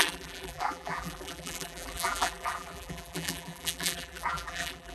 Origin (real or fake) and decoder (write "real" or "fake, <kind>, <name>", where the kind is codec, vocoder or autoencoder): fake, vocoder, BigVGAN v2